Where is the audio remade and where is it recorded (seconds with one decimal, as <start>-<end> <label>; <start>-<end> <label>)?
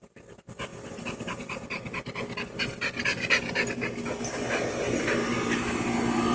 0.0-6.3 recorded